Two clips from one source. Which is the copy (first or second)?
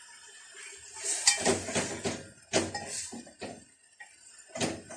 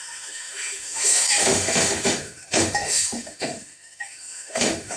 second